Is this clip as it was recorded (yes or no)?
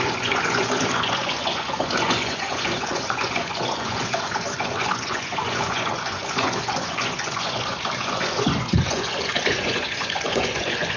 no